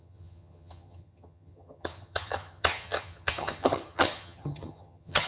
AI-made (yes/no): yes